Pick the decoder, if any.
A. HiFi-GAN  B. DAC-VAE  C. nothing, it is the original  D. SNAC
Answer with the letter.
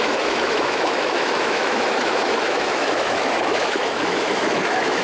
B